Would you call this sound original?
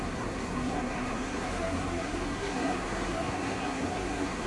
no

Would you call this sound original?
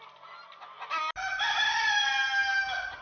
yes